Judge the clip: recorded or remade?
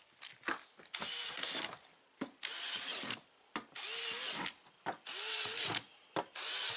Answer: recorded